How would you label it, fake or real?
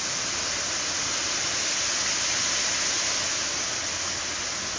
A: real